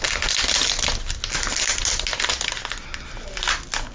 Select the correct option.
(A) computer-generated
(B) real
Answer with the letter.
B